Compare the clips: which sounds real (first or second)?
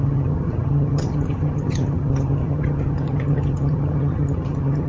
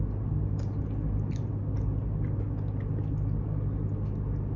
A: second